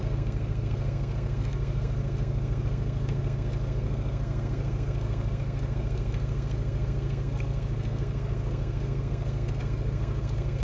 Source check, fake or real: fake